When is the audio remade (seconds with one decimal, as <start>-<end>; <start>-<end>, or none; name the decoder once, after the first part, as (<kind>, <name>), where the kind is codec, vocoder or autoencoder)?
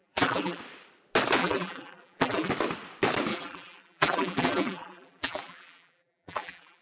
0.0-0.6 (vocoder, BigVGAN v2); 1.4-2.5; 3.3-6.8